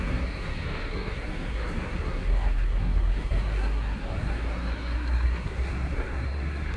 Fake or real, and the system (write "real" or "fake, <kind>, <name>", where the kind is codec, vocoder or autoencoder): fake, codec, SNAC